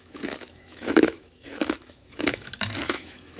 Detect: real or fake fake